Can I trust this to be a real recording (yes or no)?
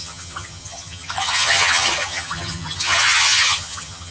no